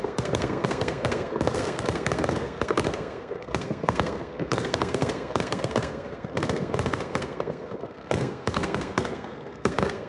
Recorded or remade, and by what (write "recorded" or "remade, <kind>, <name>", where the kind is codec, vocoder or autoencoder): remade, codec, SNAC